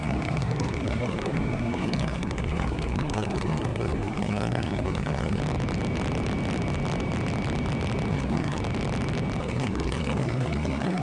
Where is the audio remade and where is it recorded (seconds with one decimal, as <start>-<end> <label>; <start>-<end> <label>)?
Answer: 0.0-5.4 remade; 5.4-8.1 recorded; 8.1-8.6 remade; 8.6-9.4 recorded; 9.4-11.0 remade